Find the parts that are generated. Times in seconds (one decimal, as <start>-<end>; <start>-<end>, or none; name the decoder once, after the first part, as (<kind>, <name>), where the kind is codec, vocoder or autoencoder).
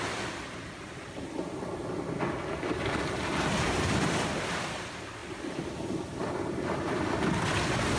5.2-6.3 (vocoder, BigVGAN v2)